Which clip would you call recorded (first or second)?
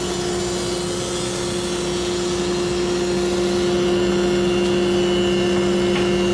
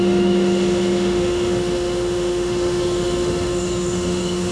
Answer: first